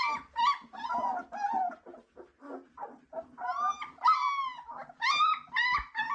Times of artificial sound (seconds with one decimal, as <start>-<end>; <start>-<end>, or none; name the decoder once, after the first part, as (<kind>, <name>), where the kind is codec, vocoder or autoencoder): none